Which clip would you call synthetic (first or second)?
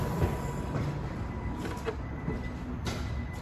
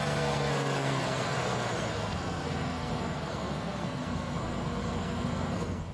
second